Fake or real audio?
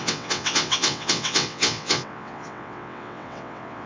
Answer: fake